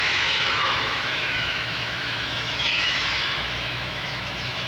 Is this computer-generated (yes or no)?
yes